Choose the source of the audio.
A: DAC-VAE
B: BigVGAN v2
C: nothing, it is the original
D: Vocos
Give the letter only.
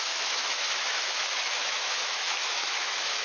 A